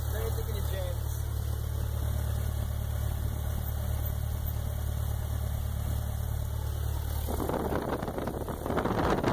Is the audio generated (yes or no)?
no